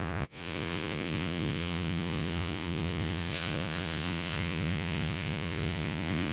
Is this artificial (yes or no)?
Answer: yes